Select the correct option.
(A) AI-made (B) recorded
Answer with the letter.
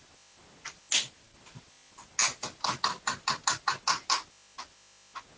B